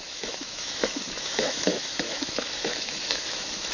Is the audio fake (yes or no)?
yes